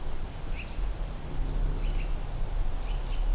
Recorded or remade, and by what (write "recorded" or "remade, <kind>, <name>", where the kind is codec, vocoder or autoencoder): recorded